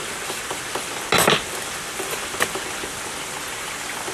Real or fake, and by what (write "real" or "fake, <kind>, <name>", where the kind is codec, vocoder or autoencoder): real